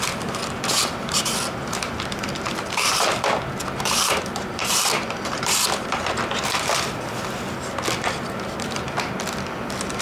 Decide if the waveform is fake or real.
fake